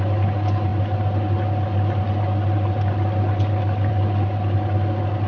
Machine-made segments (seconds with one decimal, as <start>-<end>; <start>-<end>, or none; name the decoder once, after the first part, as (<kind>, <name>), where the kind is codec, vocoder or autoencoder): none